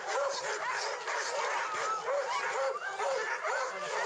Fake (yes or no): no